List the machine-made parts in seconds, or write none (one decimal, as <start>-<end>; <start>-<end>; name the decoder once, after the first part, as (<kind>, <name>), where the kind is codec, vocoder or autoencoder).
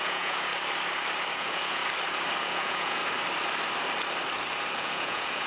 0.0-0.5 (vocoder, Vocos); 1.3-1.8; 2.4-3.0; 4.8-5.5